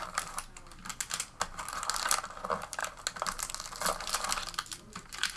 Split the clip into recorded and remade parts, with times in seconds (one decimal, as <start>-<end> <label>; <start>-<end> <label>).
0.0-5.4 recorded

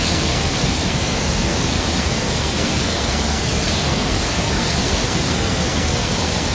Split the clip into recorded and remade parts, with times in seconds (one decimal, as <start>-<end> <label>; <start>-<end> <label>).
0.0-6.5 remade

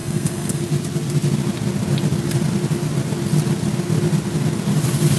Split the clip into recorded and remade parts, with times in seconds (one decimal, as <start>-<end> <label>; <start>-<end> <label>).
0.0-0.6 remade; 0.6-5.2 recorded

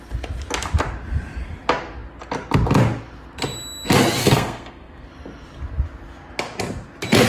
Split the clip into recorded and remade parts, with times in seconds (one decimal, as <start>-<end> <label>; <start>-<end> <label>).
0.0-4.2 recorded; 4.2-5.1 remade; 5.1-7.3 recorded

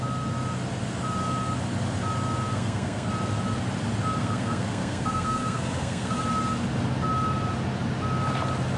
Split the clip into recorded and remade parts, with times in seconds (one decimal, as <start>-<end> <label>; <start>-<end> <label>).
0.0-2.5 recorded; 2.5-3.1 remade; 3.1-4.2 recorded; 4.2-6.2 remade; 6.2-8.8 recorded

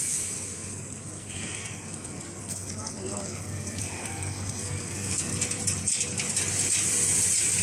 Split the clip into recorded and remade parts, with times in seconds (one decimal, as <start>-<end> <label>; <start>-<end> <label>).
0.0-5.3 remade; 5.3-7.6 recorded

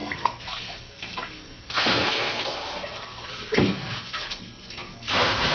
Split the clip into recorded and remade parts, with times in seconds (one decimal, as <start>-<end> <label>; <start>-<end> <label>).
0.0-5.5 remade

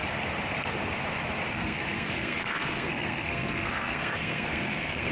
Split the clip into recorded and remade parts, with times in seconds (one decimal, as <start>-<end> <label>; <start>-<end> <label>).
0.0-1.5 recorded; 1.5-5.1 remade